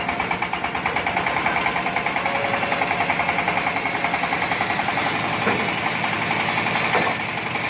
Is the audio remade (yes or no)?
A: no